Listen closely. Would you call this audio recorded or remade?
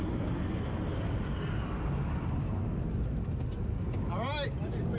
recorded